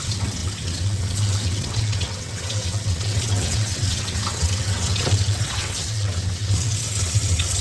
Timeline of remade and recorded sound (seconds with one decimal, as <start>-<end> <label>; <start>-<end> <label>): 0.0-7.6 remade